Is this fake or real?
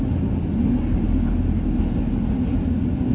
real